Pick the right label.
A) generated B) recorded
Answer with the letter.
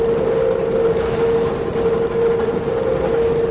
B